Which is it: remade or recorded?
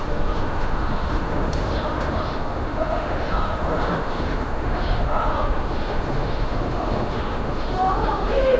remade